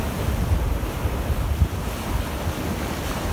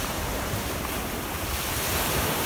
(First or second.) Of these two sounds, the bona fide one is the first